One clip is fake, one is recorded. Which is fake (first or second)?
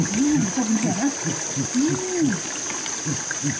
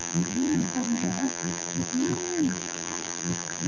second